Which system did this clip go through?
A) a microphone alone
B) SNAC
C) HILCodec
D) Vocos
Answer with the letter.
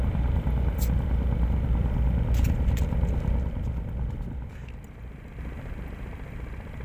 A